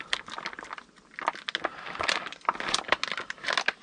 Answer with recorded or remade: recorded